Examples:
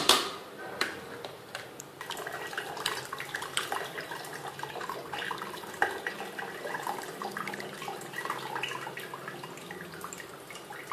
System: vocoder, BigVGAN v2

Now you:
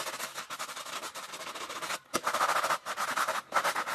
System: none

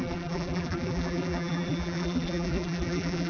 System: vocoder, BigVGAN v2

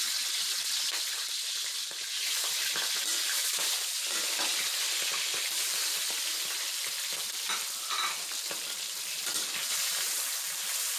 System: none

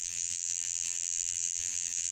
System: vocoder, BigVGAN v2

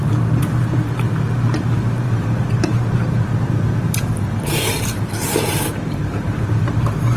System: vocoder, BigVGAN v2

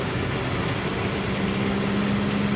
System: none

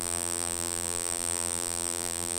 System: vocoder, BigVGAN v2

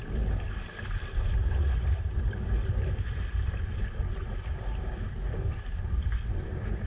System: vocoder, BigVGAN v2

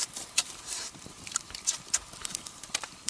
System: vocoder, BigVGAN v2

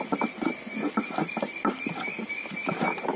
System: vocoder, BigVGAN v2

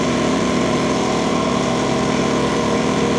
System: vocoder, BigVGAN v2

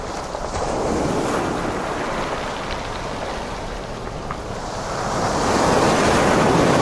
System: none